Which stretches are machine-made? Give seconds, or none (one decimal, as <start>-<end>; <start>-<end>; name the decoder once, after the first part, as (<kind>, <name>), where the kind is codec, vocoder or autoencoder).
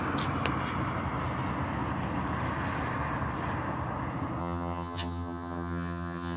4.4-6.4 (vocoder, HiFi-GAN)